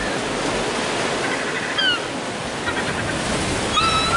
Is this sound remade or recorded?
recorded